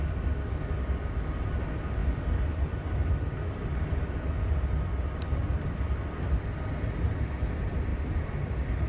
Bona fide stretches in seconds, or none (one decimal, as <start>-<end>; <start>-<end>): 0.0-7.9